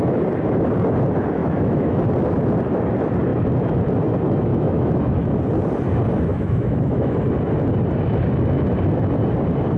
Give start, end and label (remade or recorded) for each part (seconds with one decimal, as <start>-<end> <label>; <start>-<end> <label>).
0.0-1.4 recorded; 1.4-2.0 remade; 2.0-4.5 recorded; 4.5-5.4 remade; 5.4-6.3 recorded; 6.3-7.1 remade; 7.1-9.8 recorded